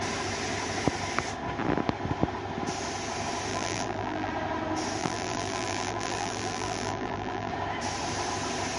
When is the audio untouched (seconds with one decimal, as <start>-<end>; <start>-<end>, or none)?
0.0-3.5; 4.3-5.0; 7.5-8.8